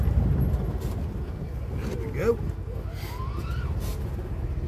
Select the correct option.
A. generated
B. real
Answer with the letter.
B